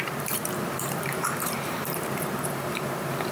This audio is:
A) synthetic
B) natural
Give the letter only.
A